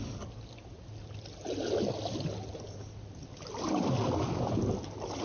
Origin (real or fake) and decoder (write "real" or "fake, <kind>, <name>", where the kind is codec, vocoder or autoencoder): real